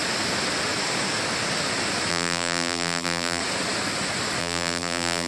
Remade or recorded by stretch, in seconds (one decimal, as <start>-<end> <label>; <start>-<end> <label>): 0.0-2.1 recorded; 2.1-3.4 remade; 3.4-4.4 recorded; 4.4-5.3 remade